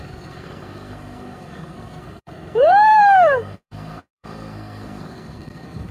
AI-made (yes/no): yes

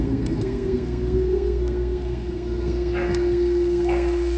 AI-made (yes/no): yes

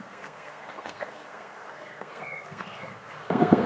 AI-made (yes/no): yes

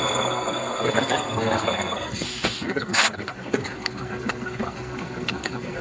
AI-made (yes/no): yes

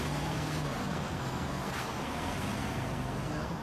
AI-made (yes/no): yes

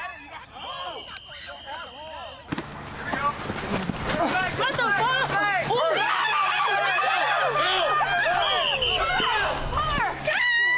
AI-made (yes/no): no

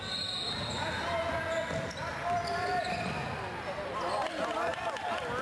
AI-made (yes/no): no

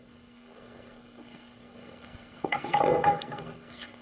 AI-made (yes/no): yes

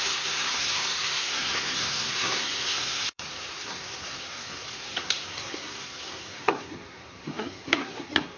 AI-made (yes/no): yes